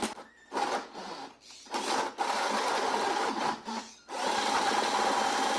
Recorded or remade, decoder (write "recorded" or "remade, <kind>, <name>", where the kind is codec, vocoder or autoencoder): recorded